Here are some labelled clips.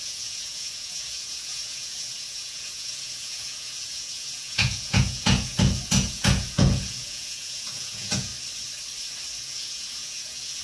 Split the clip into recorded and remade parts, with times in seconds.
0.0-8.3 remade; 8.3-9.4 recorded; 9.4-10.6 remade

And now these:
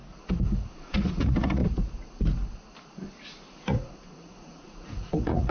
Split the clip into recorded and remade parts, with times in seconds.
0.0-0.7 recorded; 0.7-1.6 remade; 1.6-3.6 recorded; 3.6-5.5 remade

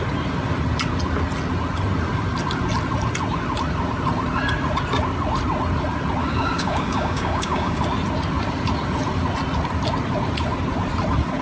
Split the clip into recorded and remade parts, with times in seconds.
0.0-6.2 recorded; 6.2-7.8 remade; 7.8-11.4 recorded